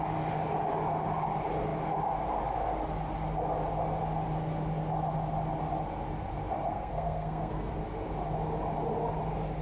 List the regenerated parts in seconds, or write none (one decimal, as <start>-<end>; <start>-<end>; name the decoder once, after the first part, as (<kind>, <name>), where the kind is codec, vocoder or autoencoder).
6.7-7.7 (codec, SNAC)